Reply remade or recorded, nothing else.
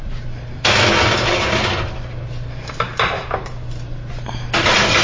recorded